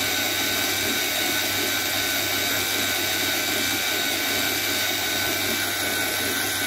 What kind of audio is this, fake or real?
real